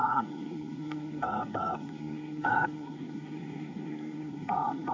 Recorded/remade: remade